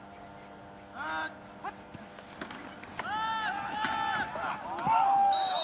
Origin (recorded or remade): recorded